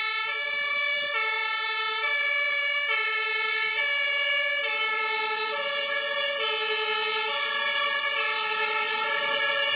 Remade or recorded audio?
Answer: remade